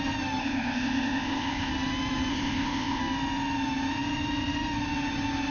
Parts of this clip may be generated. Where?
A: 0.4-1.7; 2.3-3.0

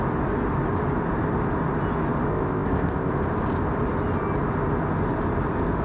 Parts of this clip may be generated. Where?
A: 2.3-3.1

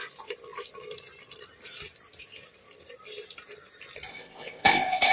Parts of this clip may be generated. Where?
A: 4.1-5.1

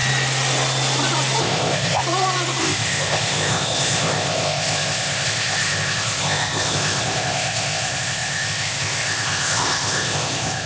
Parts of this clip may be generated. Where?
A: 1.4-2.0; 2.6-10.7

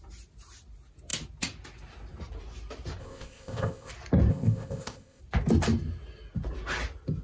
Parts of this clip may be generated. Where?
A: 3.0-3.9; 4.3-5.2